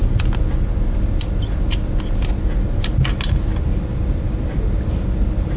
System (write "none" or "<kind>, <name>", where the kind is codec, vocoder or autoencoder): none